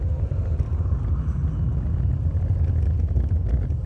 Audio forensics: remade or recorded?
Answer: recorded